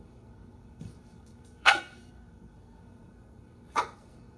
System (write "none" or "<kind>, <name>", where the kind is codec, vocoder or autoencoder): codec, SNAC